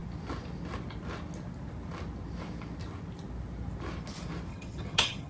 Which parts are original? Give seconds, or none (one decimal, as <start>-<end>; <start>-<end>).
0.0-4.5